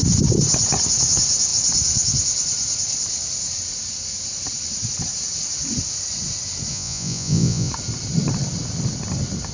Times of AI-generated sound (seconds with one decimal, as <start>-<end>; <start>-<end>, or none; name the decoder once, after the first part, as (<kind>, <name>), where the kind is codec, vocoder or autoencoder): 6.7-7.7 (vocoder, Vocos)